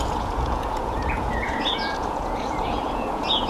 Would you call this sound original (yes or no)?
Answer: no